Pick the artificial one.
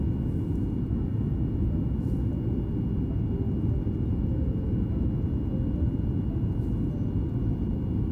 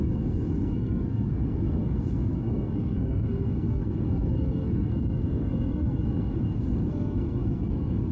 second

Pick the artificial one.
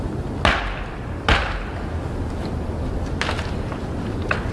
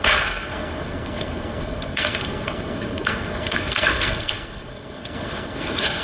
second